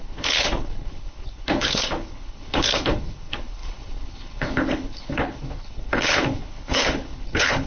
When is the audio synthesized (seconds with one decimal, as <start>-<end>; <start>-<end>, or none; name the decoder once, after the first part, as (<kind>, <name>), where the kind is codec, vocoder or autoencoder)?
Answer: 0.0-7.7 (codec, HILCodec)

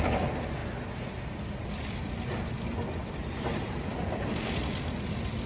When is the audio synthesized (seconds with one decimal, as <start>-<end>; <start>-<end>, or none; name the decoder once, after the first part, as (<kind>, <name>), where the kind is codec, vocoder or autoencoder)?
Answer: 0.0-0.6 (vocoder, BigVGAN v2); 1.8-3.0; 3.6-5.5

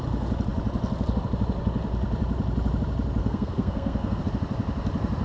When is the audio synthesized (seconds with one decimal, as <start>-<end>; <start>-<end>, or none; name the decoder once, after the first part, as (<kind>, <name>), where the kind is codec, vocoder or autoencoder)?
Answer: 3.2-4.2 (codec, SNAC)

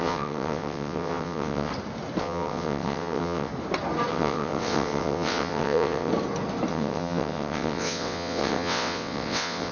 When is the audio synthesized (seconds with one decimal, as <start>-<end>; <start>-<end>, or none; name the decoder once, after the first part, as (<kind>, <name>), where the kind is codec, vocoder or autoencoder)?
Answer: 0.0-1.7 (vocoder, WaveNeXt); 2.2-3.5; 4.1-6.1; 6.7-9.7

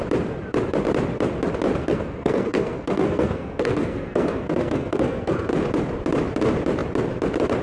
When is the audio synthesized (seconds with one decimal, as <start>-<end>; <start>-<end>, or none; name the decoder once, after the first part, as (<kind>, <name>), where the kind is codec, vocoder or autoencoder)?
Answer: 1.8-5.5 (codec, SNAC)

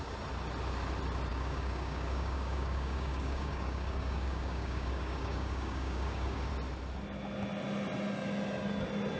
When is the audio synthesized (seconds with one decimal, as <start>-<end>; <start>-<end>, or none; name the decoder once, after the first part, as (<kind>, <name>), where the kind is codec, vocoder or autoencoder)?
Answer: 1.3-6.5 (codec, DAC)

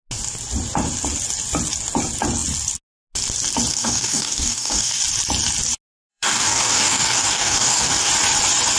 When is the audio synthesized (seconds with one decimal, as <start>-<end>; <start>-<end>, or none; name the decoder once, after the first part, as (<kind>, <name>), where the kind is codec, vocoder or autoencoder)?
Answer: 3.7-5.0 (codec, DAC); 6.1-8.1